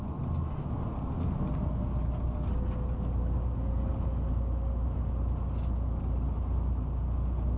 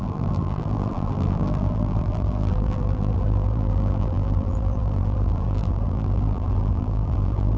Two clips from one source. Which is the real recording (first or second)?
first